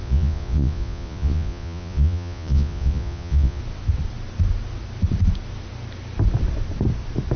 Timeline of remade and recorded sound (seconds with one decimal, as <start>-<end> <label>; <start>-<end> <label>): 0.0-3.6 remade; 3.6-7.4 recorded